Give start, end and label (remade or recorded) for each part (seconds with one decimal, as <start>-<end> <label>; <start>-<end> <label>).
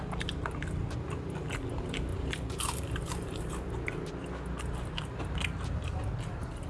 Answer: 0.0-2.1 recorded; 2.1-3.7 remade; 3.7-6.7 recorded